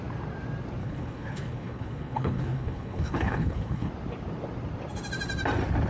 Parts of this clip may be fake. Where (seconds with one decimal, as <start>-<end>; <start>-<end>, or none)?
0.8-3.9